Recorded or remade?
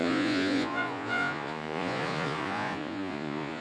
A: remade